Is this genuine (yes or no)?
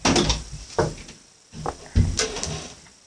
yes